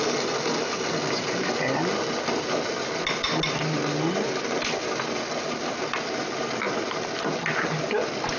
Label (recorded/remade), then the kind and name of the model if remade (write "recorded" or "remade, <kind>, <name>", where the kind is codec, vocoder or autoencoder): recorded